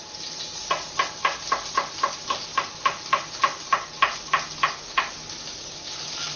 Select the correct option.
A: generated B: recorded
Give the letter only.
B